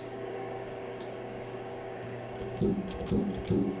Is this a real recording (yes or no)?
no